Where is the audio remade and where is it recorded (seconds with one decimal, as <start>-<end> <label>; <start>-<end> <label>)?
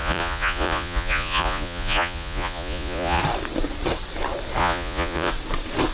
0.0-3.2 remade; 3.2-4.6 recorded; 4.6-5.3 remade; 5.3-5.9 recorded